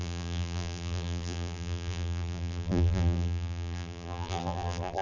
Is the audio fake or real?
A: fake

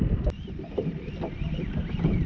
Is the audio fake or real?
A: fake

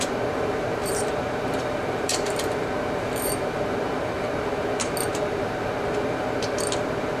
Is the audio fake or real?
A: fake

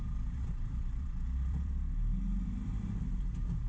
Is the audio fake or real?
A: fake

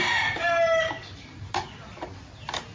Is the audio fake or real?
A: real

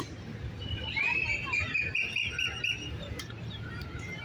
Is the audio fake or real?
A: fake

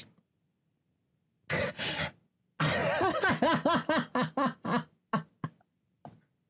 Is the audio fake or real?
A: real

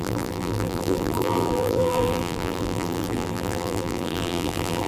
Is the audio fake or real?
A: fake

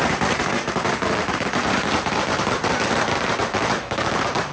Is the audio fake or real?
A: fake